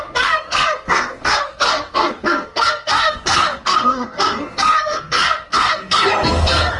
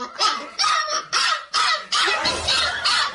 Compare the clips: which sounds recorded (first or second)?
second